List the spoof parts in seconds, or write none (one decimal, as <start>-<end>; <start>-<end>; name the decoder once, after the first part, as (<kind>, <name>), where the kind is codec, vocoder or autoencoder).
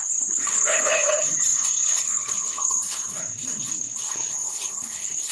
0.0-5.3 (codec, HILCodec)